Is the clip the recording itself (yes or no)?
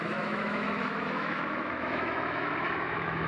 no